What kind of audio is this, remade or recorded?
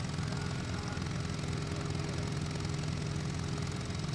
recorded